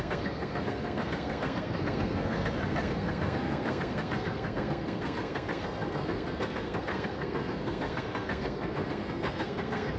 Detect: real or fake fake